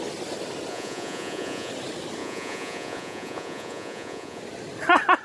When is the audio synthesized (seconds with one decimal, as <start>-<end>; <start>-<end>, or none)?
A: 0.7-1.7; 2.2-4.4